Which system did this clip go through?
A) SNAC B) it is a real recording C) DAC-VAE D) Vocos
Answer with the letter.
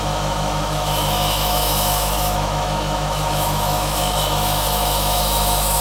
C